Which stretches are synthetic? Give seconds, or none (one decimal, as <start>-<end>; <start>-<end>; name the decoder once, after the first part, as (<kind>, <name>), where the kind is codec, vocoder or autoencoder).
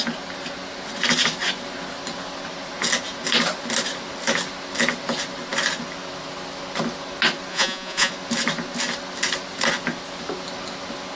7.5-8.1 (vocoder, Vocos)